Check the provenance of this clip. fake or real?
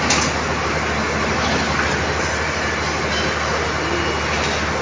real